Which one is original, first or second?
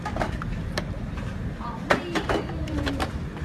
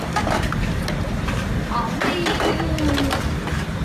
second